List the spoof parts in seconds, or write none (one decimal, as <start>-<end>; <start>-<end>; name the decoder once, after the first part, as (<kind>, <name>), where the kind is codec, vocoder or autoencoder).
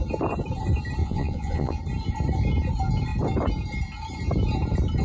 1.0-1.8 (vocoder, Vocos)